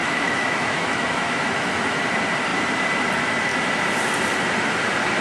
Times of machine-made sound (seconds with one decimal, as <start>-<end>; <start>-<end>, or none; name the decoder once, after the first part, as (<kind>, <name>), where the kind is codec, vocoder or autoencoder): 0.0-2.0 (autoencoder, DAC-VAE)